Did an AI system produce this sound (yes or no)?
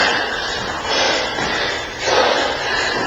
no